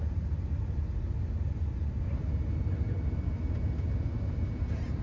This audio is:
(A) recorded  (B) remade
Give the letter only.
A